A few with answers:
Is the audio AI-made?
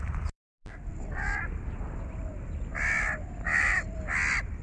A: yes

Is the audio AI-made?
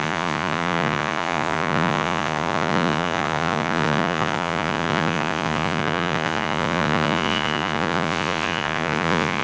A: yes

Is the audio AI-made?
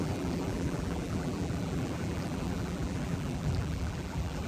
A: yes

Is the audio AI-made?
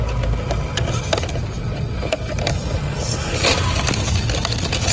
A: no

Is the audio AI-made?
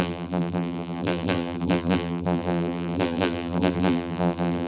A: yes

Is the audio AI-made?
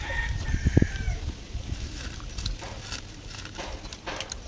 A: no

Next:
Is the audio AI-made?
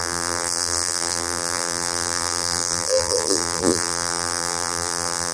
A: yes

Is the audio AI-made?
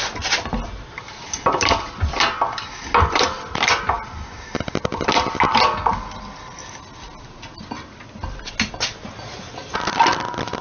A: no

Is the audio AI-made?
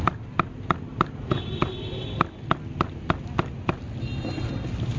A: no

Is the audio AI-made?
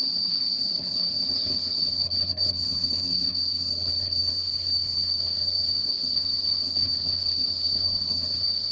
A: yes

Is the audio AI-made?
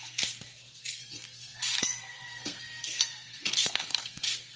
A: yes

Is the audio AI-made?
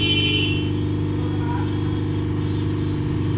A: no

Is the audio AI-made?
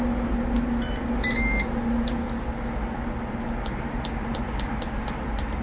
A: no